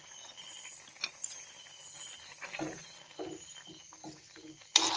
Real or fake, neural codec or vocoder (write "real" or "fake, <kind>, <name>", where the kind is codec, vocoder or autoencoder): real